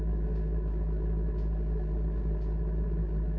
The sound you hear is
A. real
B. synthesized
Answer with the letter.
A